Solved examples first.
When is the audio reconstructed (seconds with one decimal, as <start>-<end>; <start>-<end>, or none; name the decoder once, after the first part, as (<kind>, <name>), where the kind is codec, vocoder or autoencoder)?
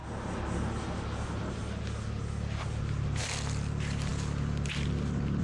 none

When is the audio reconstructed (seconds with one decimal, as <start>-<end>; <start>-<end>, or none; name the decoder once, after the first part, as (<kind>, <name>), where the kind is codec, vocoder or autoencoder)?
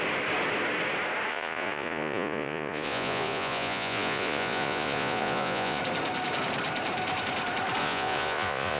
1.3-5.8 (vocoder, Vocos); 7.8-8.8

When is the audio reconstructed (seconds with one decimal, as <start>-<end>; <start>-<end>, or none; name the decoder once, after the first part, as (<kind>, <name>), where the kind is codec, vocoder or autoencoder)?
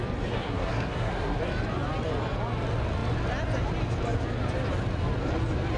0.4-1.4 (codec, SNAC)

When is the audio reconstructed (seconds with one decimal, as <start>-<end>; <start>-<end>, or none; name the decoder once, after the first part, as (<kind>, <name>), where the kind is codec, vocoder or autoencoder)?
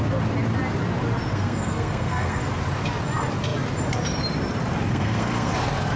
1.3-2.4 (codec, SNAC); 4.9-5.5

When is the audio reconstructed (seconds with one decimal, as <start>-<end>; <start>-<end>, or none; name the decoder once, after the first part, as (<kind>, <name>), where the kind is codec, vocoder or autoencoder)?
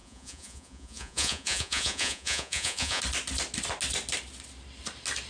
0.0-3.0 (vocoder, Vocos)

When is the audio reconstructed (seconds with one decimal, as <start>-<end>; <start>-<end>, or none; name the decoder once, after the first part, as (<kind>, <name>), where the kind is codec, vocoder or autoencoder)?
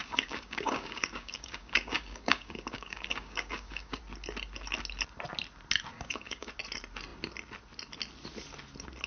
0.0-4.0 (codec, DAC); 5.9-6.5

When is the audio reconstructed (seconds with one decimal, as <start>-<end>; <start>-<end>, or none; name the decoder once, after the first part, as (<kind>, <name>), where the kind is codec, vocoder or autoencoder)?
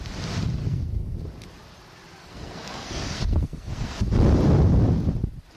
0.6-1.2 (codec, SNAC); 2.2-4.1